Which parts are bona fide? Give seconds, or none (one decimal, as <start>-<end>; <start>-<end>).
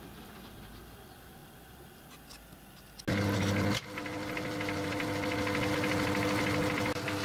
0.0-7.2